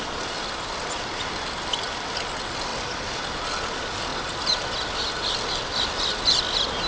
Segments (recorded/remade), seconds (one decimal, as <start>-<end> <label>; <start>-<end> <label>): 0.0-6.9 recorded